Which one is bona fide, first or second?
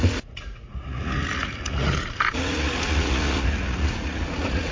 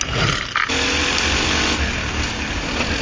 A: second